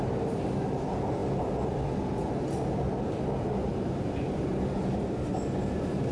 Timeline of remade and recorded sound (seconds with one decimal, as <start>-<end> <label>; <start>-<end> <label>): 0.0-6.1 recorded